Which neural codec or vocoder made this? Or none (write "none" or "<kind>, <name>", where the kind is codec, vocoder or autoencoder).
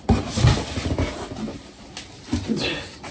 none